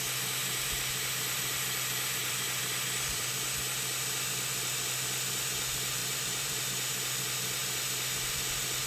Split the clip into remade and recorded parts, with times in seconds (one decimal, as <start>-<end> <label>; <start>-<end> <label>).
0.0-2.2 recorded; 2.2-3.3 remade; 3.3-6.0 recorded; 6.0-6.6 remade; 6.6-8.9 recorded